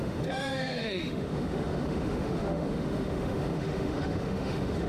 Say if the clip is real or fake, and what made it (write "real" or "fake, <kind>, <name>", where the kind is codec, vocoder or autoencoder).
fake, autoencoder, DAC-VAE